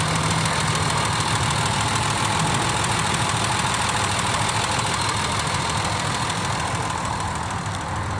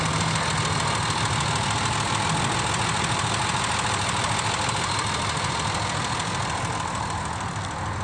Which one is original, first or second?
second